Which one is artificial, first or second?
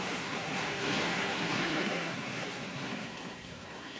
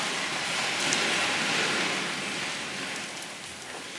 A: first